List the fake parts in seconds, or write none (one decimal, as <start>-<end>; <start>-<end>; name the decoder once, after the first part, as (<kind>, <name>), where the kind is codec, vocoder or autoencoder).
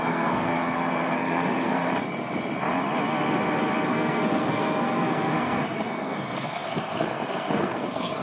0.0-1.9 (codec, SNAC); 3.9-8.2